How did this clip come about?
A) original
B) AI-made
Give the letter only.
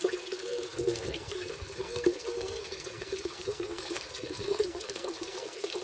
B